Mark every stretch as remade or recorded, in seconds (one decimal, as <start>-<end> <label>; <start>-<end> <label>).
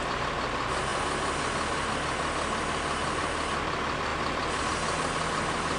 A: 0.0-5.8 recorded